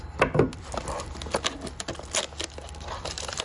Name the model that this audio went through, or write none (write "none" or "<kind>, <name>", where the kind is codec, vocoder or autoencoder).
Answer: none